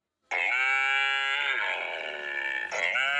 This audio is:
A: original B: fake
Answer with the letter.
A